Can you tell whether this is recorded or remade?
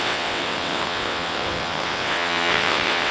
remade